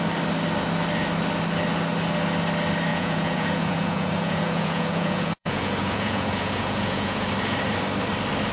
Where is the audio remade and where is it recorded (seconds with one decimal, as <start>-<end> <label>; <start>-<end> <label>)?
0.0-2.9 recorded; 2.9-7.3 remade; 7.3-8.5 recorded